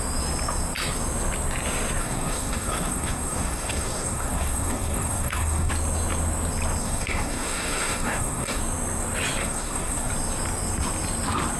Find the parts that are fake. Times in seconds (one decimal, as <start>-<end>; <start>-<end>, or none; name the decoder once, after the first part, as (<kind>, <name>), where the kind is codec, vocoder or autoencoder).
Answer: 2.0-5.7 (codec, SNAC); 6.8-8.6; 9.4-10.1